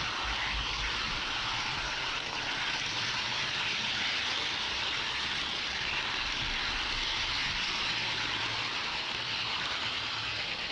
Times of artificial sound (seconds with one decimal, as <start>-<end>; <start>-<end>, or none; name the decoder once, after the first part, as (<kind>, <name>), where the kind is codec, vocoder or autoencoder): none